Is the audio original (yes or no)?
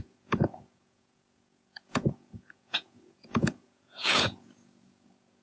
no